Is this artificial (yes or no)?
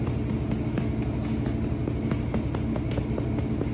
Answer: no